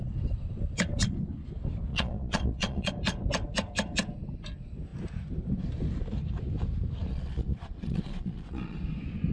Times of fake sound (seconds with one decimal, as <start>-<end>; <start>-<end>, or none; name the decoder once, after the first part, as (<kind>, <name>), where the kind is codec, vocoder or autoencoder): 1.9-2.9 (vocoder, Vocos); 7.1-8.8